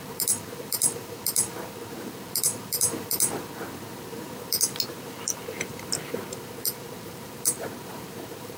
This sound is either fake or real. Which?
fake